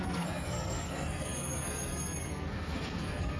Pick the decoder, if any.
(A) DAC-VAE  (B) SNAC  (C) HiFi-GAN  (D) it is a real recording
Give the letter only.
B